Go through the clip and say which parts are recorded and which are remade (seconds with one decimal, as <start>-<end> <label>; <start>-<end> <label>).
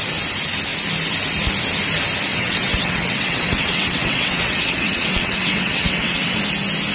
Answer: 0.0-2.3 recorded; 2.3-6.4 remade; 6.4-6.9 recorded